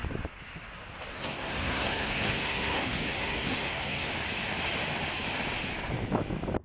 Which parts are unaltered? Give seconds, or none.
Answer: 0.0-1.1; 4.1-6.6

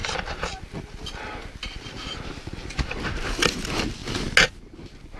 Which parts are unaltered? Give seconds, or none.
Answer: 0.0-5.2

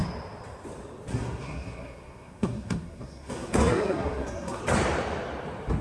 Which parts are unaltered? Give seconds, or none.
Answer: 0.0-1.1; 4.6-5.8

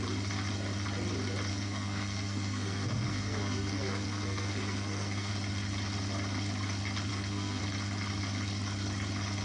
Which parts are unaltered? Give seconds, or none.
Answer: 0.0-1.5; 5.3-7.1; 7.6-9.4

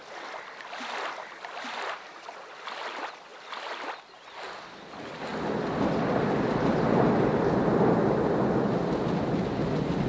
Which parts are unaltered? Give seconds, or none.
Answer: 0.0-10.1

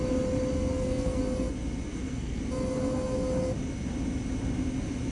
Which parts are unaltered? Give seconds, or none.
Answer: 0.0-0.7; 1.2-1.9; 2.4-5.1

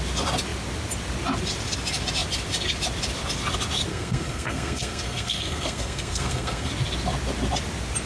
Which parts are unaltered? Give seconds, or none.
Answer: 0.0-3.9; 6.7-8.1